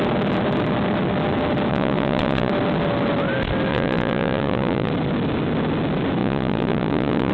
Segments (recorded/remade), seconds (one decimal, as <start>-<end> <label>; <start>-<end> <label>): 0.0-1.7 recorded; 1.7-2.5 remade; 2.5-3.7 recorded; 3.7-4.9 remade; 4.9-6.2 recorded; 6.2-7.3 remade